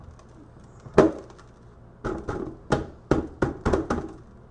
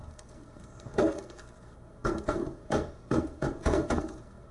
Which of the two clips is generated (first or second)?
second